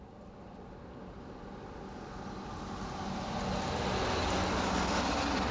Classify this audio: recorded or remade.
recorded